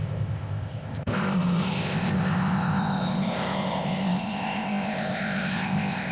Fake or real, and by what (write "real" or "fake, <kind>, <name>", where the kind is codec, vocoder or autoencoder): fake, codec, ZipCodec